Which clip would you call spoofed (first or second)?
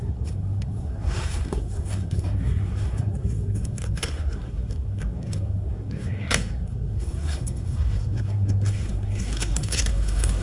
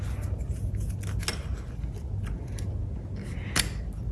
first